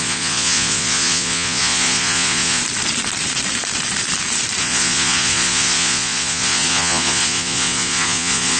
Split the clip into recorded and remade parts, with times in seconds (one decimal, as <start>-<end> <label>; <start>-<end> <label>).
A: 0.0-2.6 remade; 2.6-4.6 recorded; 4.6-8.6 remade